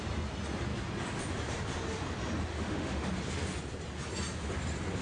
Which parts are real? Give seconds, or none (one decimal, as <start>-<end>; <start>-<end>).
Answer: 0.0-2.5; 3.1-5.0